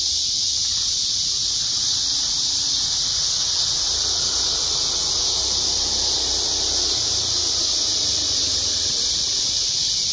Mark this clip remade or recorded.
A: recorded